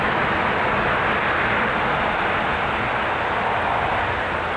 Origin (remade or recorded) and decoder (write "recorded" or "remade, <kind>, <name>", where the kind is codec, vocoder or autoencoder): recorded